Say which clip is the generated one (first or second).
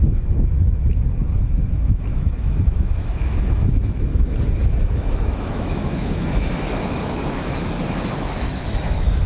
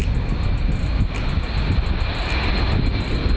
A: first